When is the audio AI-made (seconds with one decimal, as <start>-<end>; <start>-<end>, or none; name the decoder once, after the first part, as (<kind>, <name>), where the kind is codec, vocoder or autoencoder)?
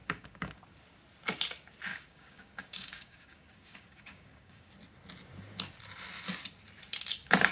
0.0-0.5 (codec, DAC); 1.9-4.7